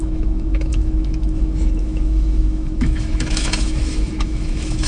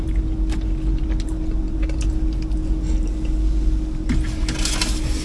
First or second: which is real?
second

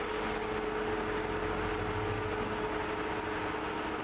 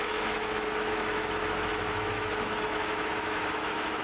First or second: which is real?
first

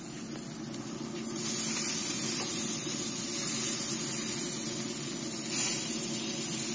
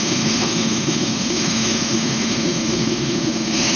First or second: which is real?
first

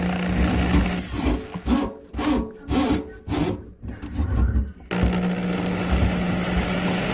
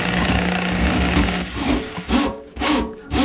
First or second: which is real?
first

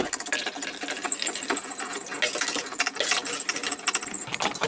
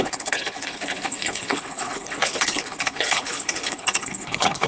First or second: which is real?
first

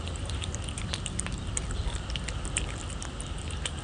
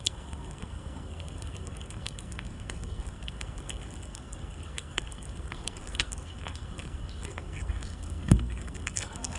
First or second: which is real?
first